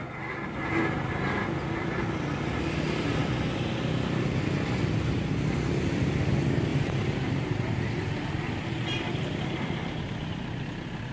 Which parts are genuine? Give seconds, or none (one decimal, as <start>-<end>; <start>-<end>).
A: 0.0-6.7; 10.6-11.1